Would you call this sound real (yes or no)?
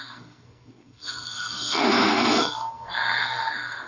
no